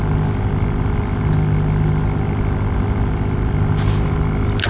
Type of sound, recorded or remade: recorded